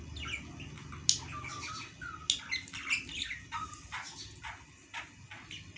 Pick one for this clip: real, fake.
real